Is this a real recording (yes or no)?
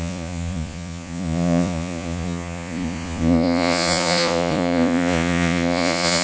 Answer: no